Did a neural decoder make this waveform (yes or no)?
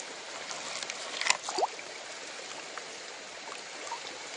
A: no